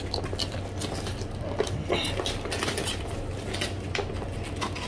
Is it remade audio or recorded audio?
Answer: recorded